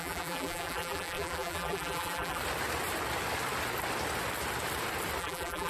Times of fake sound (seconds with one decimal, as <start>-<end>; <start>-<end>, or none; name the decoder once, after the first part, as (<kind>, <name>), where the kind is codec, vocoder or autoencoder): 0.0-2.4 (vocoder, BigVGAN v2); 5.2-5.7

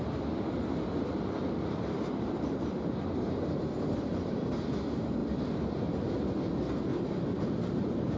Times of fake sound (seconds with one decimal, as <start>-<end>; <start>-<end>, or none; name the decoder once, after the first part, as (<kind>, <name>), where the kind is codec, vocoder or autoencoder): 1.4-4.4 (vocoder, BigVGAN v2); 6.9-8.2